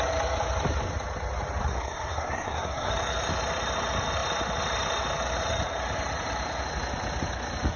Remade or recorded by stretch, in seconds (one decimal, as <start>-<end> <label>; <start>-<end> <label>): 0.0-1.6 recorded; 1.6-2.9 remade; 2.9-7.8 recorded